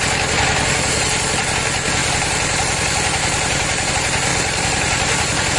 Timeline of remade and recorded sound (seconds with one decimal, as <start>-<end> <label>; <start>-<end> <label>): 0.0-0.4 recorded; 0.4-1.4 remade; 1.4-2.0 recorded; 2.0-3.9 remade; 3.9-4.3 recorded; 4.3-5.6 remade